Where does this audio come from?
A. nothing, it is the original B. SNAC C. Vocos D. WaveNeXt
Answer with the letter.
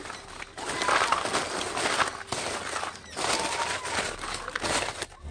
A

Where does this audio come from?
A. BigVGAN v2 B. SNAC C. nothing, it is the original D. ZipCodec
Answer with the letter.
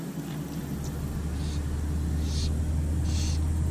C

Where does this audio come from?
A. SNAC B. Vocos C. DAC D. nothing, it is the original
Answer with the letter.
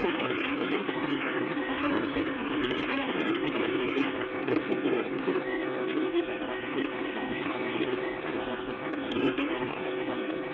A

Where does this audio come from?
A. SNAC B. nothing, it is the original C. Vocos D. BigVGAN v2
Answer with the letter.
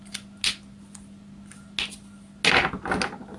B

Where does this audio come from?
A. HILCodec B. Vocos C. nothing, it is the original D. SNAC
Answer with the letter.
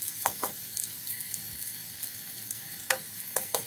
D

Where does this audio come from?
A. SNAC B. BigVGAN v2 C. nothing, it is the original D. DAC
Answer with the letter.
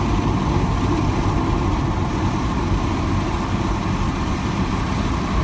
C